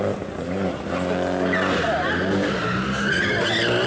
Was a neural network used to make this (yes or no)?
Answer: no